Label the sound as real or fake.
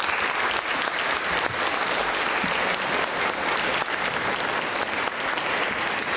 real